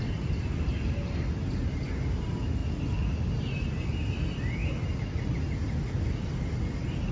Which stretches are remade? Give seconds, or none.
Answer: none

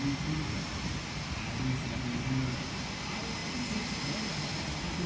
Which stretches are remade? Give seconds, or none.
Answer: none

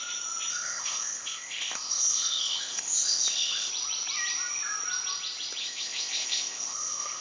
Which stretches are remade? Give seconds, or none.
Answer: 0.5-3.7 (codec, ZipCodec); 5.6-7.2

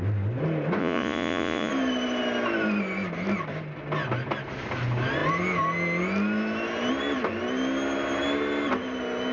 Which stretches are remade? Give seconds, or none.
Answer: 0.8-1.7 (vocoder, Vocos)

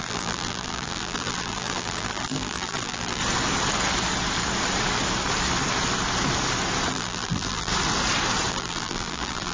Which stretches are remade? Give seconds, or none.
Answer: 0.0-3.2 (vocoder, BigVGAN v2); 6.9-7.7; 8.5-9.5

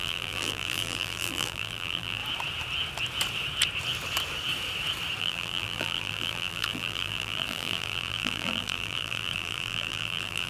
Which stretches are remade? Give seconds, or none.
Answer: 0.0-2.2 (vocoder, BigVGAN v2); 5.2-10.5